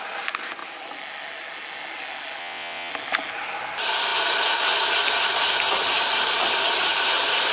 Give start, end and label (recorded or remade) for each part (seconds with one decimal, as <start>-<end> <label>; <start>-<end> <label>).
0.0-2.4 recorded; 2.4-2.9 remade; 2.9-7.5 recorded